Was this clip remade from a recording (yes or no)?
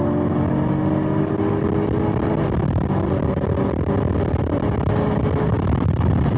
no